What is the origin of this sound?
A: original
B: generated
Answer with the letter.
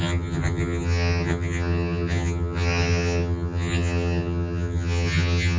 B